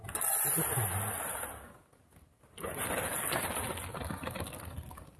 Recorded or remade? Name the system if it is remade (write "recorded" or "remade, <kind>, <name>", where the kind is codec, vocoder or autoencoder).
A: recorded